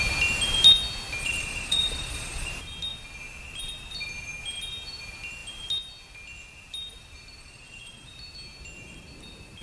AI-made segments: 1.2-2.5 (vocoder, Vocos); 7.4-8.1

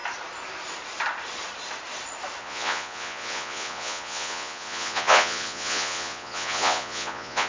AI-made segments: 2.4-7.5 (vocoder, Vocos)

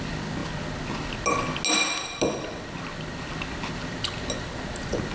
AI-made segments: none

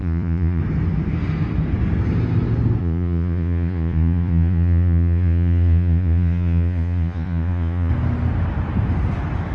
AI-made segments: 0.0-0.6 (vocoder, Vocos); 2.8-7.9